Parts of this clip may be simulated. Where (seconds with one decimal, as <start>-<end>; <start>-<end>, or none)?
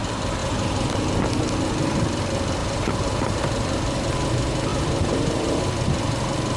0.4-0.9; 2.6-3.4; 4.7-5.6